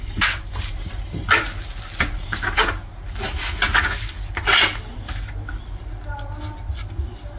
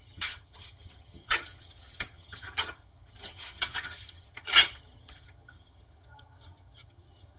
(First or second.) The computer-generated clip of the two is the second